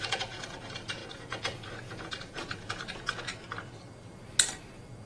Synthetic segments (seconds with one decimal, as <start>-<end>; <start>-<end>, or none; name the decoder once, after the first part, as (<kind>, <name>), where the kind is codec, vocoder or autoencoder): 0.0-3.3 (vocoder, Vocos)